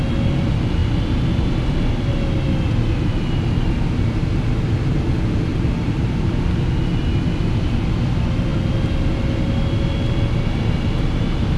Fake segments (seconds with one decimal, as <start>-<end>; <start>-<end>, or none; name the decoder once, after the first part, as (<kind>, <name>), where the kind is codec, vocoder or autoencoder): 5.5-6.6 (vocoder, BigVGAN v2)